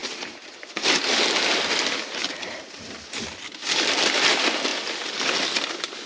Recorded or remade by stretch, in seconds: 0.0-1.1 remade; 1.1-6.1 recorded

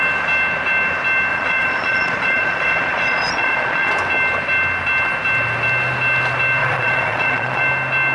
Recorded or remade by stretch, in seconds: 0.0-1.3 recorded; 1.3-3.9 remade; 3.9-6.6 recorded; 6.6-7.6 remade; 7.6-8.1 recorded